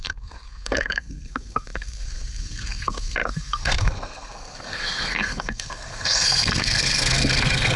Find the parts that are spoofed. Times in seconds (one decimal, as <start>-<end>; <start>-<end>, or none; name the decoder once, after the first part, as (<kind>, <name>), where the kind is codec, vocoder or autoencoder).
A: 0.0-7.8 (codec, SNAC)